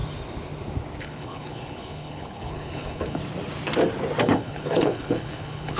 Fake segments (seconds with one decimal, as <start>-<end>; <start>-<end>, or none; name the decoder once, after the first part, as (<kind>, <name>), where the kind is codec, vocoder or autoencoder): 1.0-3.2 (codec, HILCodec); 4.2-5.8